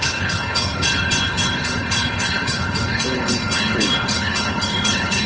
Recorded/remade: remade